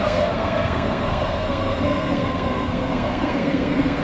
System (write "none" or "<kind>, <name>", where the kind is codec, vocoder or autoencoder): codec, SNAC